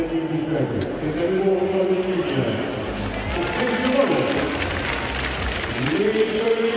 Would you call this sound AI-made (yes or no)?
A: no